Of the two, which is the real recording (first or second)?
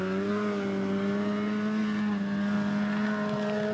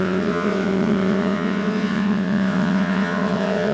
first